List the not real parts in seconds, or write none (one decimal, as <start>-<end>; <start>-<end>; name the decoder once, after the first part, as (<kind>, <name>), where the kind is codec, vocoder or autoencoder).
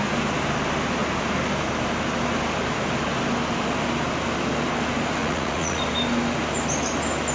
5.2-5.8 (vocoder, Vocos)